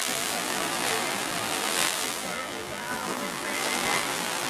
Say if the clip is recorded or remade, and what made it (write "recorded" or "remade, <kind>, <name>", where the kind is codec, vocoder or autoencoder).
remade, vocoder, BigVGAN v2